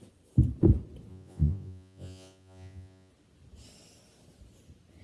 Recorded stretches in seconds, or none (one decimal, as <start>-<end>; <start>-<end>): 0.0-1.1; 3.1-5.0